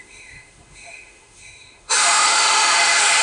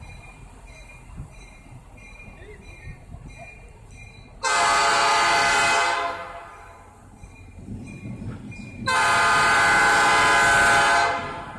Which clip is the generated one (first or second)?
first